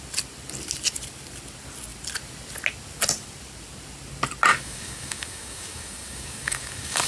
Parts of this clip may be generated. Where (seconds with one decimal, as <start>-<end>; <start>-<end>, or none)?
4.5-7.1